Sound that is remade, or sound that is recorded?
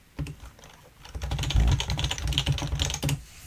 recorded